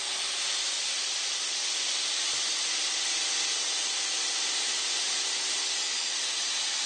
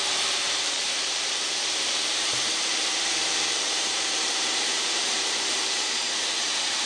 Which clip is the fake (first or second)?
second